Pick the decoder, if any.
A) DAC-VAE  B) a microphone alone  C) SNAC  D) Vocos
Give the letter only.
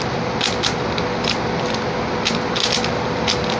B